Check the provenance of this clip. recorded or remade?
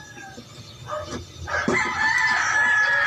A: recorded